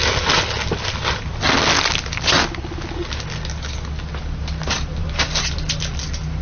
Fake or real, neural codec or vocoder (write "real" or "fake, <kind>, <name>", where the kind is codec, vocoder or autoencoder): real